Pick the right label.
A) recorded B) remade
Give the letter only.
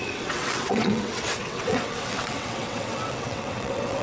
B